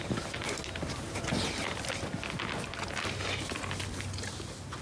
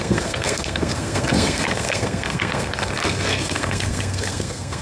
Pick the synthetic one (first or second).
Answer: second